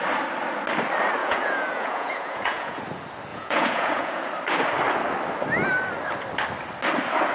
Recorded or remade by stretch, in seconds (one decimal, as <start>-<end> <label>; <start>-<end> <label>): 0.0-1.2 recorded; 1.2-2.8 remade; 2.8-3.3 recorded; 3.3-4.2 remade; 4.2-7.3 recorded